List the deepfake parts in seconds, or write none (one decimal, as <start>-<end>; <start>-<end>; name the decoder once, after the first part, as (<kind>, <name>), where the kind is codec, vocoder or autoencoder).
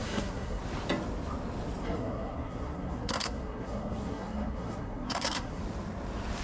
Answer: 0.0-0.6 (codec, SNAC); 1.8-5.6